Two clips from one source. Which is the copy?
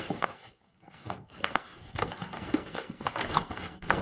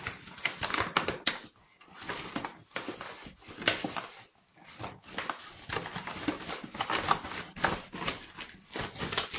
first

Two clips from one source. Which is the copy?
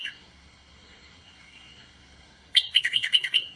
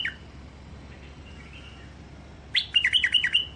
first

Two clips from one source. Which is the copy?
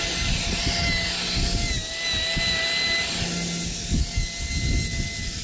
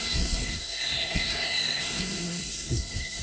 second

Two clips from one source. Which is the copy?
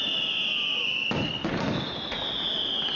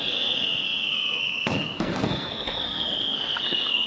second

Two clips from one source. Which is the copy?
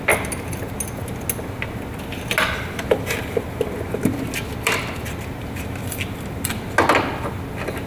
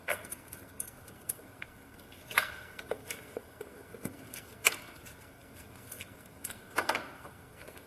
second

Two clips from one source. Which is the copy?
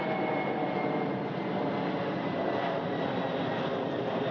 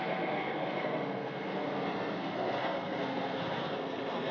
second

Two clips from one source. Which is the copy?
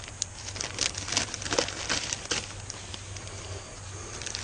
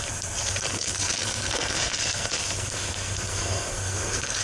second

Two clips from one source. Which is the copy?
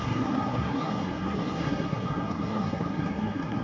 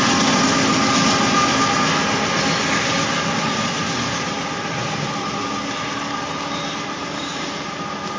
first